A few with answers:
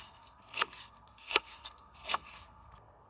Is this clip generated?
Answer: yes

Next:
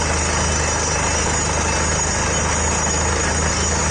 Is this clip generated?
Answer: no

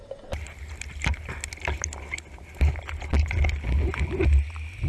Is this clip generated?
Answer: no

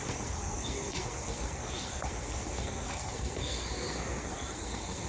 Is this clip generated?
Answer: yes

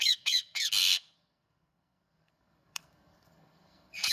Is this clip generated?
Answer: yes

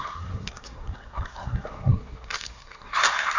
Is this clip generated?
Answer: yes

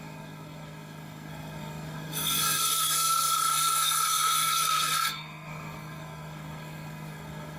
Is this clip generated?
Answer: yes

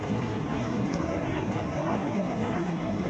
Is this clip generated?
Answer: yes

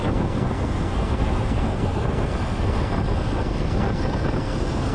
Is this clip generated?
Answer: yes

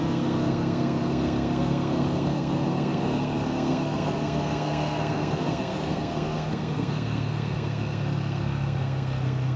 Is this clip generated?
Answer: yes